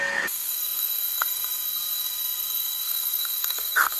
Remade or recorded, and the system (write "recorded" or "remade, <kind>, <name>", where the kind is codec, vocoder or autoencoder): remade, codec, SNAC